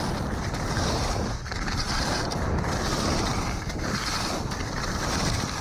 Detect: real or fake fake